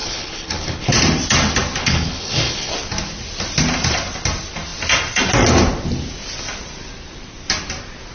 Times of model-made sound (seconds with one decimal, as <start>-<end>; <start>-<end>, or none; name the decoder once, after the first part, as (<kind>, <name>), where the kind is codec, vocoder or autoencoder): 0.0-0.9 (codec, HILCodec); 1.8-2.7